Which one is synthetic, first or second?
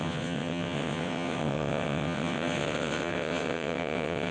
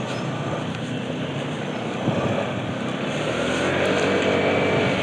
first